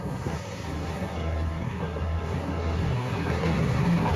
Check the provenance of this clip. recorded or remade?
remade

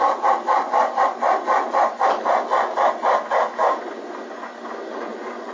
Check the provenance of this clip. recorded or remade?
recorded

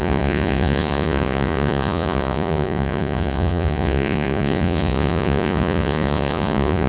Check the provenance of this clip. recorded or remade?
remade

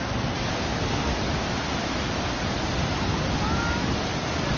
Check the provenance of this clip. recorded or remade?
recorded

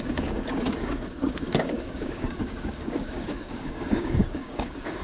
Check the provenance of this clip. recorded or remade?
remade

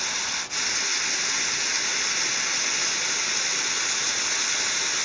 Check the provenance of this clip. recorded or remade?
recorded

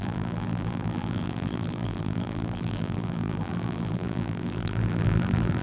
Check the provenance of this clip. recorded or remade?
remade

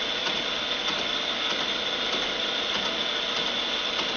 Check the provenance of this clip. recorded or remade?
recorded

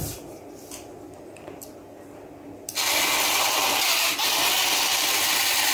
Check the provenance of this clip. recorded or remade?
recorded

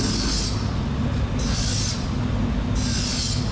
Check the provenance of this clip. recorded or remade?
recorded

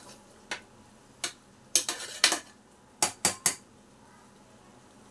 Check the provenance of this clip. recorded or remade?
recorded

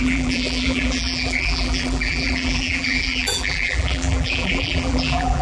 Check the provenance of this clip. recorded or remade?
remade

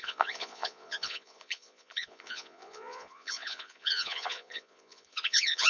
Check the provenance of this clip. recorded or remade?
remade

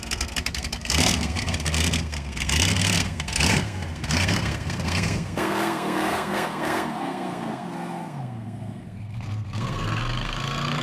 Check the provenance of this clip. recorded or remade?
remade